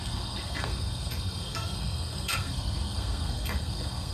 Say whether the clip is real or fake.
fake